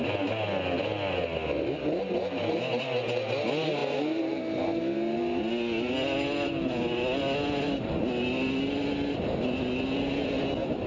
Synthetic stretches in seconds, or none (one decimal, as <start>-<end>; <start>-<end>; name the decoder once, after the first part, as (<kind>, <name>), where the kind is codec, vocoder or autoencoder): none